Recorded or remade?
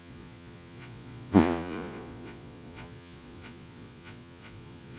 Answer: remade